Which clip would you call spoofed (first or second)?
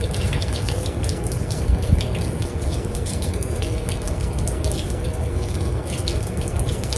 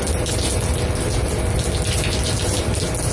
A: first